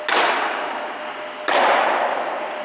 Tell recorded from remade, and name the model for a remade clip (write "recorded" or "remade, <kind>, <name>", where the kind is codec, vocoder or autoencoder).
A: recorded